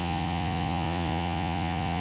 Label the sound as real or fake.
fake